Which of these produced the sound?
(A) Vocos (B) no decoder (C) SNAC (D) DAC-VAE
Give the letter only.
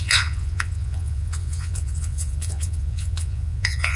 A